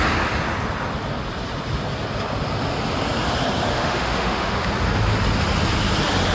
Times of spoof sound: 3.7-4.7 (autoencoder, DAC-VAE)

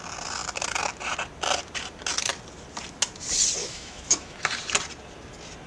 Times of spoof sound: 3.6-4.4 (autoencoder, DAC-VAE)

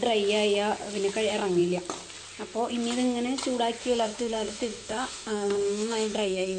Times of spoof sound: 3.8-6.6 (autoencoder, DAC-VAE)

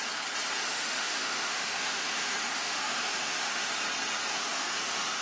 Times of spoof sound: 0.6-3.7 (autoencoder, DAC-VAE); 4.3-5.2